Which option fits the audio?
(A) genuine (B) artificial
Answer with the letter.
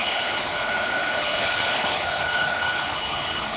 B